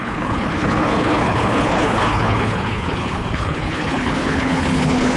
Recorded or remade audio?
remade